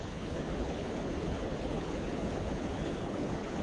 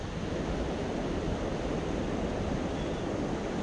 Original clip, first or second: second